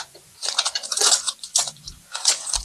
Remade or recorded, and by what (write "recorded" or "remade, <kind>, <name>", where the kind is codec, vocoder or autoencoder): remade, vocoder, Vocos